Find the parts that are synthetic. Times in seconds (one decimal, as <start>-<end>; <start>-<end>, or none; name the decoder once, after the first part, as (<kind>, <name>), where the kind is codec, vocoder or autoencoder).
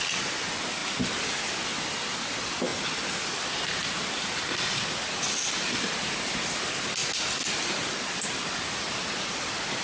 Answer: 2.7-4.9 (vocoder, BigVGAN v2)